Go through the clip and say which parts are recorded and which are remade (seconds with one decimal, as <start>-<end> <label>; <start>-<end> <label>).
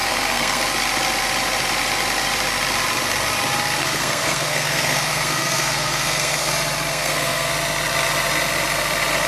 0.0-0.6 remade; 0.6-3.8 recorded; 3.8-6.5 remade; 6.5-6.9 recorded; 6.9-7.5 remade; 7.5-9.3 recorded